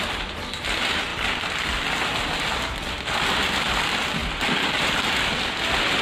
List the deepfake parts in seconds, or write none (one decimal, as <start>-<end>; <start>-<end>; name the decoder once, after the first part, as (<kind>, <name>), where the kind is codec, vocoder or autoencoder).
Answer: none